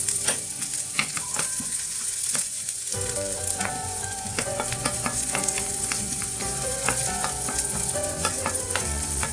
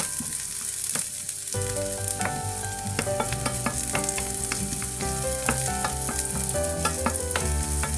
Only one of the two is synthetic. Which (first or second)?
first